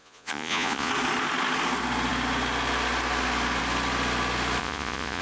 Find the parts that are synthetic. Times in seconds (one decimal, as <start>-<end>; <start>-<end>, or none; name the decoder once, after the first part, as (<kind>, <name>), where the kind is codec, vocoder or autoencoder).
0.0-0.9 (vocoder, Vocos); 4.6-5.2